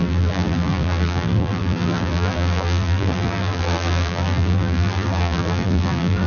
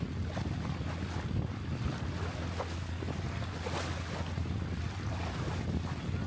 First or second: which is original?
second